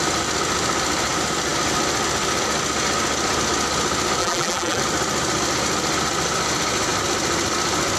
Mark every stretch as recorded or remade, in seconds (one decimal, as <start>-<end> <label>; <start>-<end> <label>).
0.0-4.2 recorded; 4.2-4.8 remade; 4.8-8.0 recorded

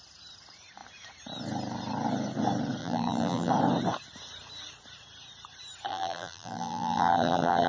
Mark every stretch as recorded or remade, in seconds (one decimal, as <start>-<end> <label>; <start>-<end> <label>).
0.0-2.8 recorded; 2.8-3.5 remade; 3.5-5.9 recorded; 5.9-7.7 remade